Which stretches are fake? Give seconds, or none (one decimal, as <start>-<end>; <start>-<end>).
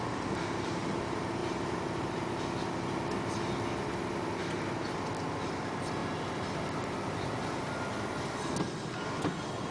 none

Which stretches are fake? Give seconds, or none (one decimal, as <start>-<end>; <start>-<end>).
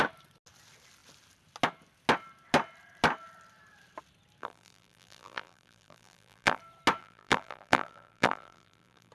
4.4-6.6; 7.0-9.1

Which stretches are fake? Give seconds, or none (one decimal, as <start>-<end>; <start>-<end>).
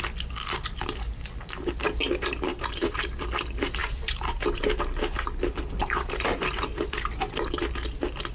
2.5-3.2; 3.8-4.8; 5.8-7.5